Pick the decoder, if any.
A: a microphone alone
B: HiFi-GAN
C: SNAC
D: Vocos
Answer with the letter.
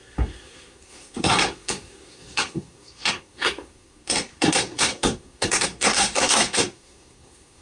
C